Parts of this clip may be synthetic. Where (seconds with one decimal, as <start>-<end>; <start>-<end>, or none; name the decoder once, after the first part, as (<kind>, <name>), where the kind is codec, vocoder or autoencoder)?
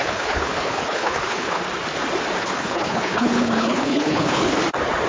0.0-1.6 (codec, HILCodec); 2.4-4.6